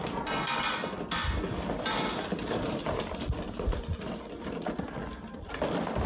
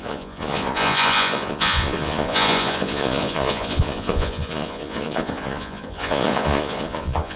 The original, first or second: first